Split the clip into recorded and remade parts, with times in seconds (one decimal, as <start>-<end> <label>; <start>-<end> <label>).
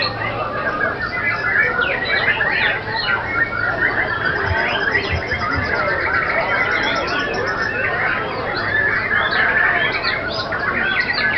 0.0-11.4 recorded